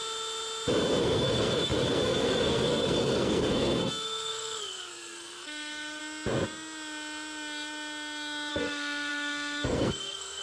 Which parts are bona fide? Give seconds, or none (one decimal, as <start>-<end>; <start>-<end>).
0.0-1.0; 6.0-8.5